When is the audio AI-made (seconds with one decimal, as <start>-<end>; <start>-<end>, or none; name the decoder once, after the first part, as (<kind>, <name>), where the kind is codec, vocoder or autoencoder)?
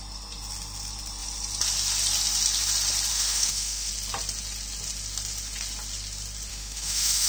3.1-3.9 (autoencoder, DAC-VAE); 6.5-7.3